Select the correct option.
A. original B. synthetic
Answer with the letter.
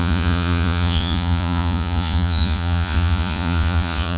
B